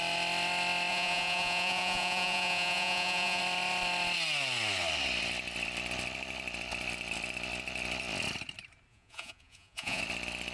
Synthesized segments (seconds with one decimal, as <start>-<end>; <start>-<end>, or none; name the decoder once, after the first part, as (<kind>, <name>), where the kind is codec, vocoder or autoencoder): 0.9-3.4 (vocoder, Vocos); 8.9-10.0